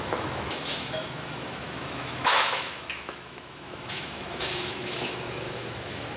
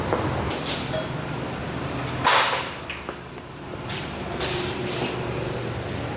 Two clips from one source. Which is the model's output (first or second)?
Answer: first